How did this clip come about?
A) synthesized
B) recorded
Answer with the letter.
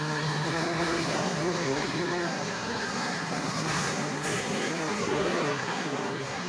A